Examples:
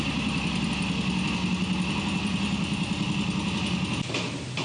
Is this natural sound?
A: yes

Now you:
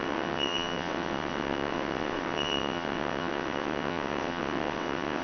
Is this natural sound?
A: no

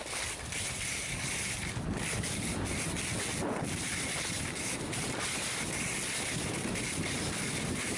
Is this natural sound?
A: yes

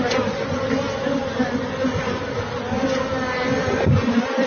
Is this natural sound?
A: yes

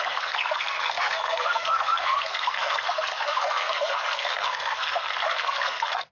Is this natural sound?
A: no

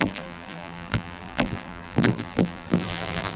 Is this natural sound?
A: no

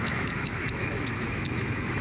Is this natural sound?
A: no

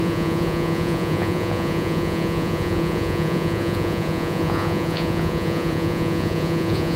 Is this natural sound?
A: no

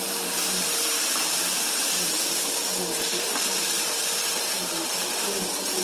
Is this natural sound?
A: no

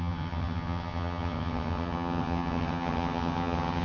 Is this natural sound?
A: no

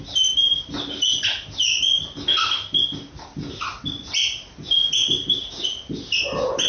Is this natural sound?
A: yes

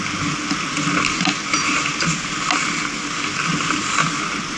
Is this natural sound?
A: yes